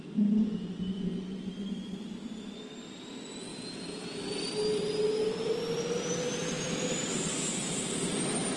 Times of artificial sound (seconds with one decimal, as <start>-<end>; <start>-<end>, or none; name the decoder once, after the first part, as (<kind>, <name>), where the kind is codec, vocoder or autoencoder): 1.3-2.6 (vocoder, BigVGAN v2); 6.4-7.3